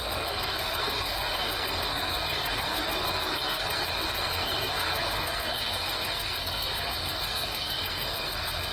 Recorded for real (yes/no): no